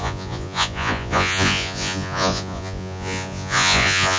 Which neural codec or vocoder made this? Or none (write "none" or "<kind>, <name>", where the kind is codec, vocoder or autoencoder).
vocoder, Vocos